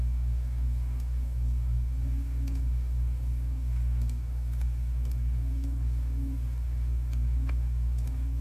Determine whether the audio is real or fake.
fake